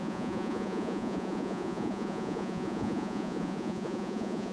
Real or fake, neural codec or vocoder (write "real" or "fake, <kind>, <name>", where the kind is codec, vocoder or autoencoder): fake, vocoder, Vocos